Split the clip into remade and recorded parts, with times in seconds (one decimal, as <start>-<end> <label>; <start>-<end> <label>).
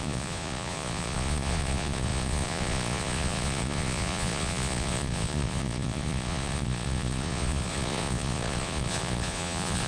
0.0-9.9 remade